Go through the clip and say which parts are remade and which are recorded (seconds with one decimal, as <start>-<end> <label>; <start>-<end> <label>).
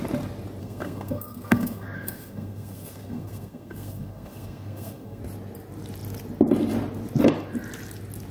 0.0-0.6 recorded; 0.6-5.2 remade; 5.2-8.3 recorded